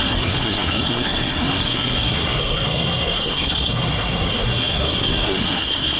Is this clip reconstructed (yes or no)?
yes